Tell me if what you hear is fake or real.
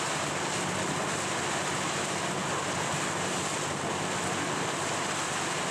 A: real